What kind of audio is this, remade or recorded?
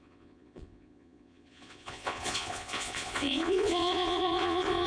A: remade